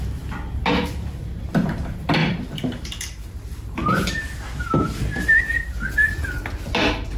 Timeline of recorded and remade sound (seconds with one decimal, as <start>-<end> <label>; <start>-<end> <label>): 0.0-2.2 recorded; 2.2-3.3 remade; 3.3-3.8 recorded; 3.8-5.4 remade; 5.4-7.2 recorded